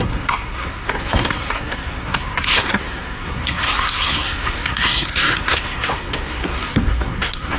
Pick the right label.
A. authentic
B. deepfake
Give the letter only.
B